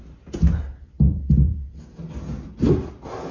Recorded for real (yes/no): yes